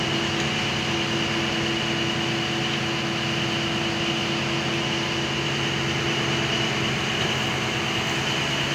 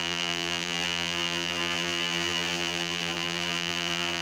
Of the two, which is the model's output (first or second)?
second